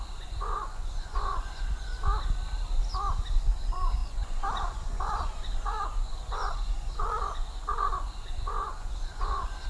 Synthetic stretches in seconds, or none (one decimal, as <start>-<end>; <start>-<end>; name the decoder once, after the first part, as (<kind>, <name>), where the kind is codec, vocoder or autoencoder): 0.0-1.9 (vocoder, Vocos); 3.5-9.7